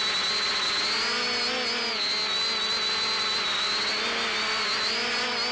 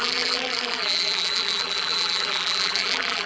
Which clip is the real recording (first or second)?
first